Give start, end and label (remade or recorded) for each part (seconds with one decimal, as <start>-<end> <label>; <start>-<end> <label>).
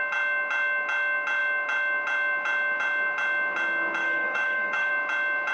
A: 0.0-4.0 recorded; 4.0-4.9 remade; 4.9-5.5 recorded